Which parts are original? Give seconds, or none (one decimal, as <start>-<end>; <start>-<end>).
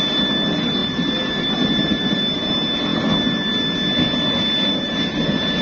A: 0.0-0.8; 2.2-5.6